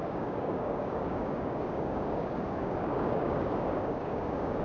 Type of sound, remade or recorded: remade